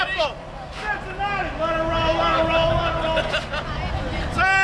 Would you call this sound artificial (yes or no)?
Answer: no